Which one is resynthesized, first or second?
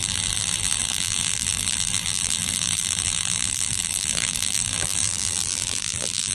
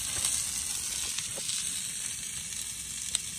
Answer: first